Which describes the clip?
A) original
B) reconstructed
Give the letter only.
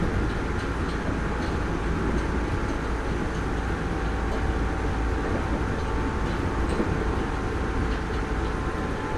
A